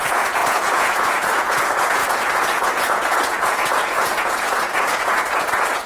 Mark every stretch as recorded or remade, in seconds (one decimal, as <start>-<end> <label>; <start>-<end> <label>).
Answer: 0.0-5.9 remade